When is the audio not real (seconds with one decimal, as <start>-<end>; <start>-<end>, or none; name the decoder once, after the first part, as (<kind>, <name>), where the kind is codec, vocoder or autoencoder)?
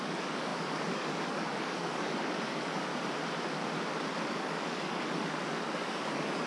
0.0-2.9 (codec, DAC); 4.3-6.5